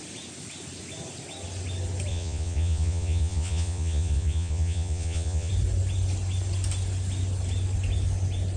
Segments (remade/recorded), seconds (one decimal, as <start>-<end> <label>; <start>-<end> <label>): 0.0-2.1 recorded; 2.1-5.5 remade; 5.5-8.6 recorded